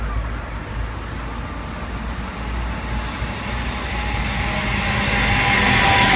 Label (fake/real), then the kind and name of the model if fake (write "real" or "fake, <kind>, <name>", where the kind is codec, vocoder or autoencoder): real